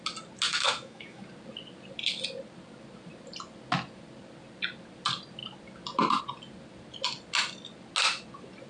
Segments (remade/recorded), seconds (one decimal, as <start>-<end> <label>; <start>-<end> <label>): 0.0-0.5 recorded; 0.5-1.2 remade; 1.2-8.7 recorded